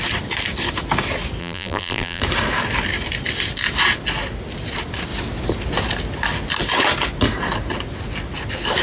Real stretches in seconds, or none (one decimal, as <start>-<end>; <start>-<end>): 0.0-1.4; 2.2-8.8